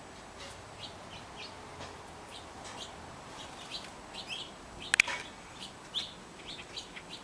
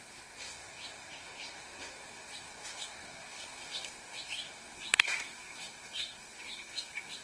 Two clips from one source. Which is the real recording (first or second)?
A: first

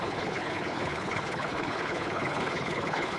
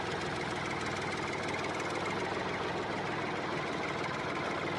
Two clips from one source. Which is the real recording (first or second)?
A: second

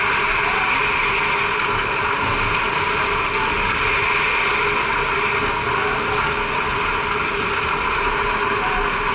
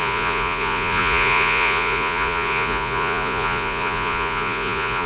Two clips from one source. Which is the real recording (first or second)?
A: first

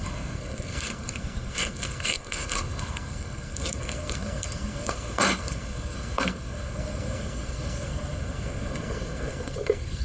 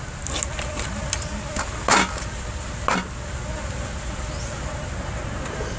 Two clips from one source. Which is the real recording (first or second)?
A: second